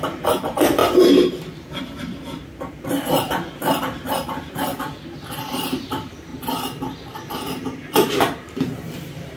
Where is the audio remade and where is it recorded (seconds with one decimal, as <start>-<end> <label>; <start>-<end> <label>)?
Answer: 0.0-4.7 remade; 4.7-5.4 recorded; 5.4-6.3 remade; 6.3-7.4 recorded; 7.4-9.4 remade